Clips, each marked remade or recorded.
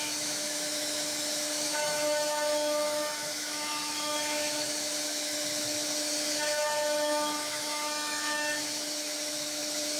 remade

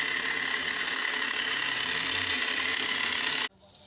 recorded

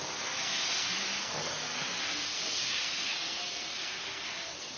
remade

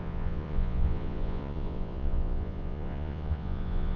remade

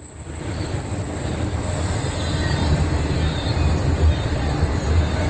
recorded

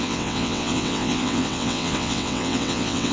remade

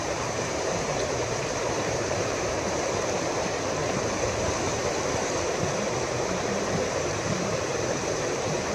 remade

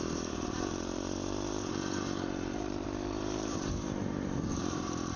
remade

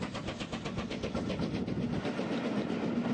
recorded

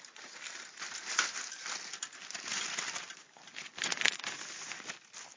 recorded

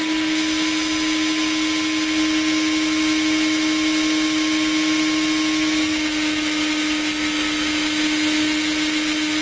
recorded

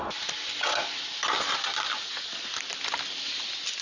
recorded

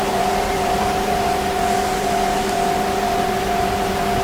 remade